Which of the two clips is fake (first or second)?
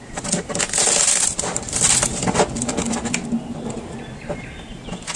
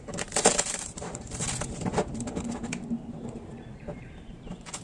second